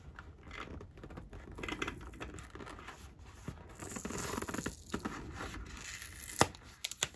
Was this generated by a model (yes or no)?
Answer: no